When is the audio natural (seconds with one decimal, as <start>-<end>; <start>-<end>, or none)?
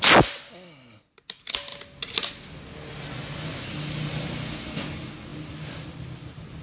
0.0-6.6